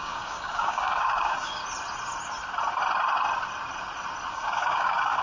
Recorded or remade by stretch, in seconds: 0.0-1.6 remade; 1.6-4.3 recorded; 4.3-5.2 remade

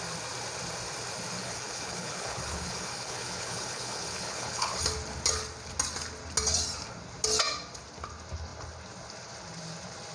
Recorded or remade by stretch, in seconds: 0.0-1.4 recorded; 1.4-4.8 remade; 4.8-10.1 recorded

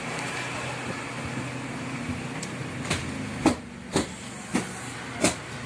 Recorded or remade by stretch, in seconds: 0.0-5.7 recorded

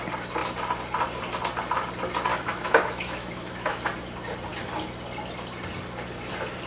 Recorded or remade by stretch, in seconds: 0.0-2.3 recorded; 2.3-3.8 remade; 3.8-6.7 recorded

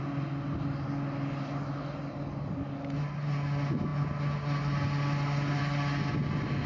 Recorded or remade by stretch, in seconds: 0.0-6.7 recorded

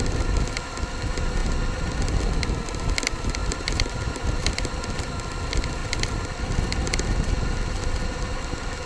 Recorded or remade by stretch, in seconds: 0.0-3.4 recorded; 3.4-4.7 remade; 4.7-8.9 recorded